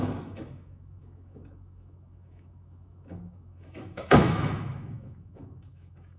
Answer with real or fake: fake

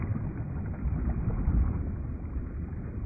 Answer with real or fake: real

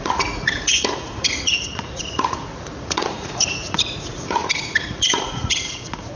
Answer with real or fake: fake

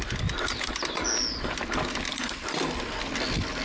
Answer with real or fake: real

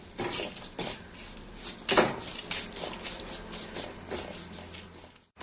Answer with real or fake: real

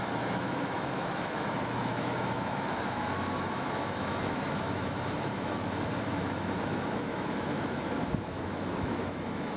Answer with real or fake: fake